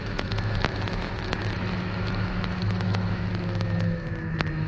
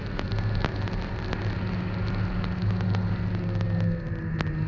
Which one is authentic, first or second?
second